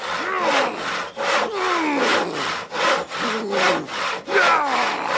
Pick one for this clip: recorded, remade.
recorded